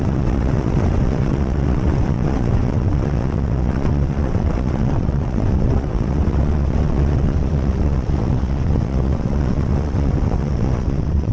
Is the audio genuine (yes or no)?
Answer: no